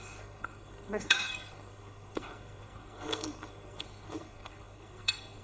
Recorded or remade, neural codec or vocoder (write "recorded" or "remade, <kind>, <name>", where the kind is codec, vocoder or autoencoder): remade, codec, SNAC